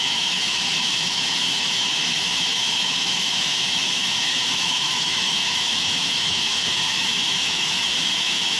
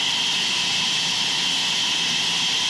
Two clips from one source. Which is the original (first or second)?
second